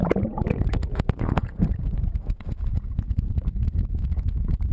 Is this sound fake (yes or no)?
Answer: yes